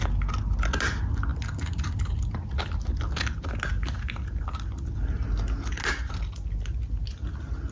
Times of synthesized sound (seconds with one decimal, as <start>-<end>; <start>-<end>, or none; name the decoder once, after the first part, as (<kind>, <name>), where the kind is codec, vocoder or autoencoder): none